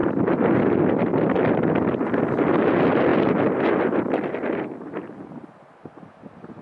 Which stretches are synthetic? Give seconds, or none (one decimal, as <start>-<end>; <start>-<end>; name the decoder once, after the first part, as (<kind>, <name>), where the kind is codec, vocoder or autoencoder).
none